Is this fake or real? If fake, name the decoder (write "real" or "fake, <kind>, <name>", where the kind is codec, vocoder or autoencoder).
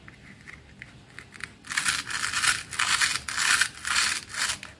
real